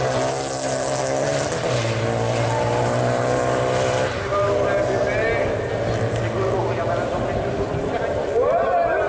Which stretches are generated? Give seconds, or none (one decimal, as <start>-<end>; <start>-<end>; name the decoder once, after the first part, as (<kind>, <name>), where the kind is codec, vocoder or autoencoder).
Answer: none